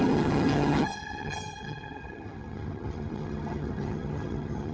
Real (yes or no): no